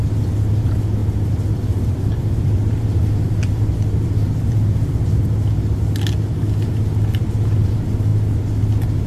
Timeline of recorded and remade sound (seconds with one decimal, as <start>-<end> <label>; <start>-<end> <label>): 0.0-1.0 recorded; 1.0-5.2 remade; 5.2-9.1 recorded